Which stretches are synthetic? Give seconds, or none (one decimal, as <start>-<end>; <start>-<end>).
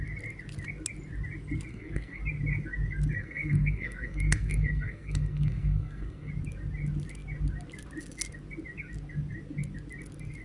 1.7-2.2; 3.2-6.3